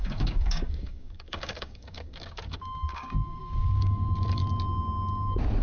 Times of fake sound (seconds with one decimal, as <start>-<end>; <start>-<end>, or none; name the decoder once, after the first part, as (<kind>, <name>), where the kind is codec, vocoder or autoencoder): 0.0-4.4 (codec, DAC)